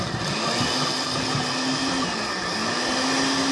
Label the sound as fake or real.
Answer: real